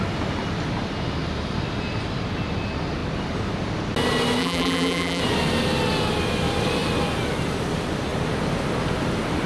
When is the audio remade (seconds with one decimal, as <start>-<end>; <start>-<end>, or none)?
4.4-5.2